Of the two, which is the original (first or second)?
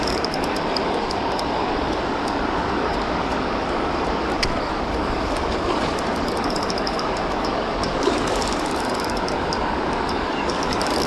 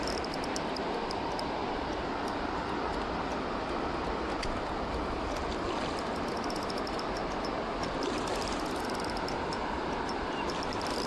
second